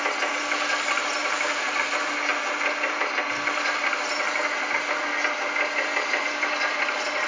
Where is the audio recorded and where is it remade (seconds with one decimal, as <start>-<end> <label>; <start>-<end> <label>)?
0.0-1.2 recorded; 1.2-1.9 remade; 1.9-2.3 recorded; 2.3-3.0 remade; 3.0-7.3 recorded